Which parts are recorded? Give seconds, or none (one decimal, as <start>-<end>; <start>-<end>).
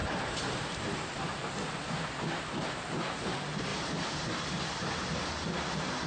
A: 1.5-3.7; 4.3-6.1